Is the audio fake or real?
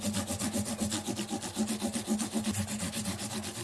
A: real